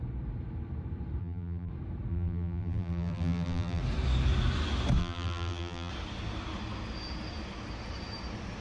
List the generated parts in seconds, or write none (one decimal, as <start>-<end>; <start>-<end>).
1.2-1.7; 2.1-3.8; 5.0-5.9